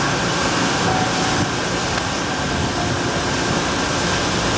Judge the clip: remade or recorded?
recorded